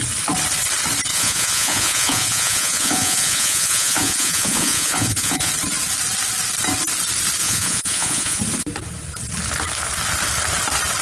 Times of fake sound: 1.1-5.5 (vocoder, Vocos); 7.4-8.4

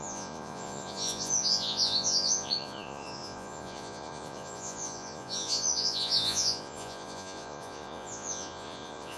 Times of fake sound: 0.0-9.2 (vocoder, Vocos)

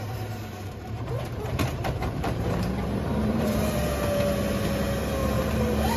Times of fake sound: 0.0-3.6 (vocoder, BigVGAN v2); 5.2-6.0